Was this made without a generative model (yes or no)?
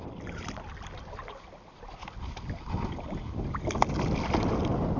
yes